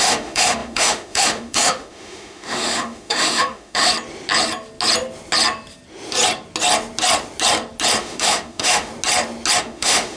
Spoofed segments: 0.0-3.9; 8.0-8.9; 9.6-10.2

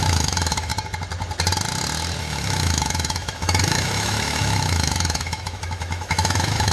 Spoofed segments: 0.0-0.7; 2.2-6.7

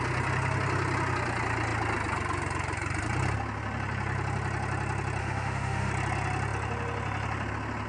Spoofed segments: 5.2-5.9